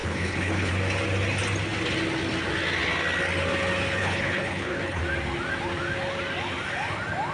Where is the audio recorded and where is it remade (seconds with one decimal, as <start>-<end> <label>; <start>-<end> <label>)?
0.0-0.7 remade; 0.7-4.0 recorded; 4.0-5.0 remade; 5.0-7.3 recorded

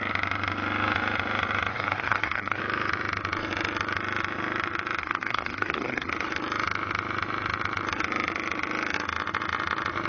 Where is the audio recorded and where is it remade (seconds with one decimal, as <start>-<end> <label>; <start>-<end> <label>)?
0.0-1.7 recorded; 1.7-2.6 remade; 2.6-5.0 recorded; 5.0-6.1 remade; 6.1-10.1 recorded

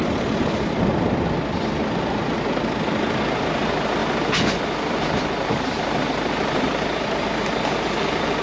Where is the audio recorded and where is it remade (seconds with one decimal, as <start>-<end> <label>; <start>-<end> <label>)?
0.0-8.4 recorded

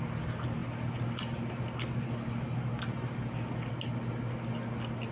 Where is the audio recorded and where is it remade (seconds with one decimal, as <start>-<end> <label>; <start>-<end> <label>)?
0.0-5.1 recorded